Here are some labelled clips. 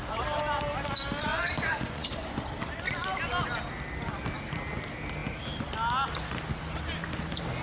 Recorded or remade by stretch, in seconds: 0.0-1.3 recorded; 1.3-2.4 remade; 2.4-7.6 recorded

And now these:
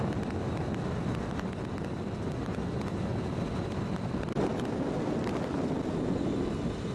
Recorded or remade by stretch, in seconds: 0.0-6.9 recorded

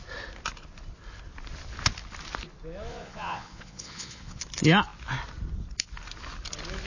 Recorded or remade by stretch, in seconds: 0.0-2.9 recorded; 2.9-4.4 remade; 4.4-6.9 recorded

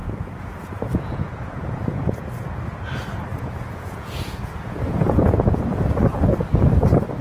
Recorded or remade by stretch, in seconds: 0.0-2.3 remade; 2.3-3.3 recorded; 3.3-5.6 remade; 5.6-7.2 recorded

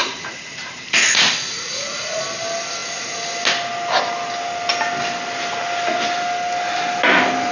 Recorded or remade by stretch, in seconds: 0.0-0.5 remade; 0.5-1.0 recorded; 1.0-2.2 remade; 2.2-7.5 recorded

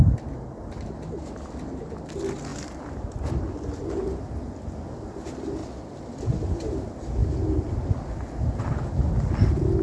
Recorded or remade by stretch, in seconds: 0.0-9.8 recorded